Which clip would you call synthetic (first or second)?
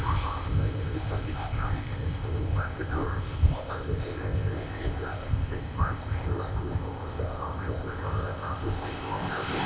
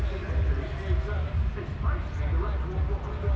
first